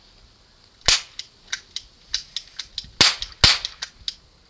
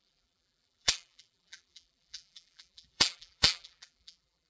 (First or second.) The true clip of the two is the first